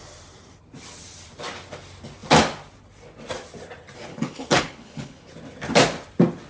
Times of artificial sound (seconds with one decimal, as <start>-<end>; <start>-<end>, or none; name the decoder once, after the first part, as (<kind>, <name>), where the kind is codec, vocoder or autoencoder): 4.1-5.3 (codec, HILCodec)